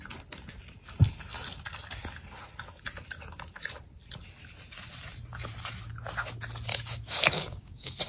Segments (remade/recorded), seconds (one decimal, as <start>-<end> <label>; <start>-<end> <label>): 0.0-6.7 recorded; 6.7-8.1 remade